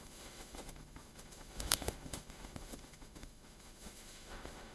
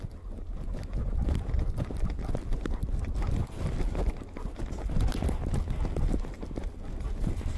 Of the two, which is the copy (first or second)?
first